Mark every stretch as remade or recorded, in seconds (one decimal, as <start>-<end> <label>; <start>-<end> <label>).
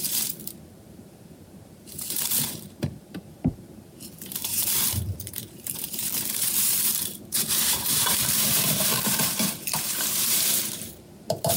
0.0-11.6 remade